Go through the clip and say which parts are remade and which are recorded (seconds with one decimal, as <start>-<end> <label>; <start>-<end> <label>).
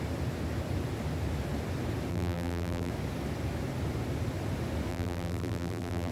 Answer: 0.0-2.1 recorded; 2.1-2.9 remade; 2.9-4.9 recorded; 4.9-6.1 remade